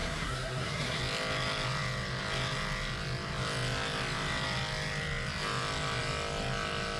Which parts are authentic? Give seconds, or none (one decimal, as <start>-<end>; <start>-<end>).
1.0-7.0